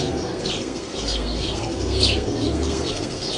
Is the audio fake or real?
fake